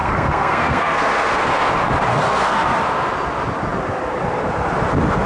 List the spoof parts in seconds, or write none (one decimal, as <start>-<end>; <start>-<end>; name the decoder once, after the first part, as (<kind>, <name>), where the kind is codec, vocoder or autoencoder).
0.0-1.7 (codec, SNAC); 2.1-2.8